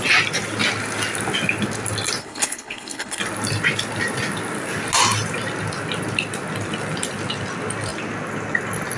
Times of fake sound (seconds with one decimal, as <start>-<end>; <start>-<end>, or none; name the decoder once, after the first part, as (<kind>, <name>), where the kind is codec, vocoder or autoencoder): 2.2-3.2 (codec, HILCodec)